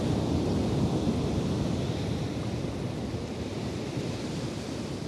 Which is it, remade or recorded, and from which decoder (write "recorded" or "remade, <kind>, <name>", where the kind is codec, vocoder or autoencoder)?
recorded